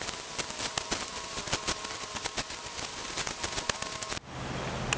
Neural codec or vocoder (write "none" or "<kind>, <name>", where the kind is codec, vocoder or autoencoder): none